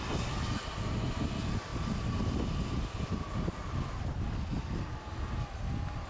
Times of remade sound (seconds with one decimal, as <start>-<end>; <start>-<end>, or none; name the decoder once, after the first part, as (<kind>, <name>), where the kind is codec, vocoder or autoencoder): none